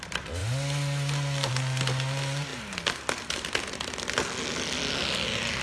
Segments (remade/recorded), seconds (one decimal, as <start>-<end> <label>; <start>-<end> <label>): 0.0-5.6 recorded